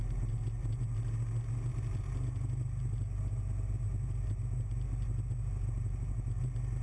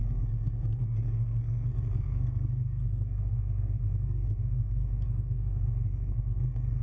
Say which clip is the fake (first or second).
second